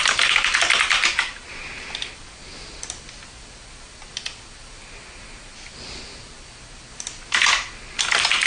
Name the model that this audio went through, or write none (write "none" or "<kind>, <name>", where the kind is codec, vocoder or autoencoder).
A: none